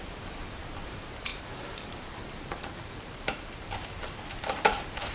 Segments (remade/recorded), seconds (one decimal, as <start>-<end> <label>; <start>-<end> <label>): 0.0-5.1 remade